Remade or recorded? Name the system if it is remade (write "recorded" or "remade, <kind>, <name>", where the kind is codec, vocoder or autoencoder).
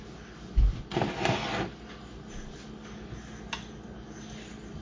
recorded